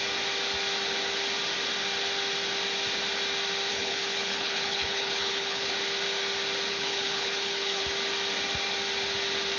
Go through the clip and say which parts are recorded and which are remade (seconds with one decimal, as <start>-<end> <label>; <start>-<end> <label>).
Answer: 0.0-3.7 recorded; 3.7-5.7 remade; 5.7-6.7 recorded; 6.7-7.8 remade; 7.8-9.6 recorded